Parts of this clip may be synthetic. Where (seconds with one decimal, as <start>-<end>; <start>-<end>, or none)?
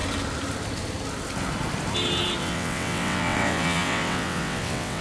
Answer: 2.4-5.0